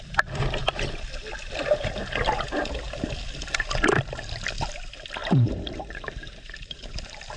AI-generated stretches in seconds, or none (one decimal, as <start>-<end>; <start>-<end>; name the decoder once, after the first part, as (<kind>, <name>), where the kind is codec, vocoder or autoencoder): 5.2-7.4 (vocoder, BigVGAN v2)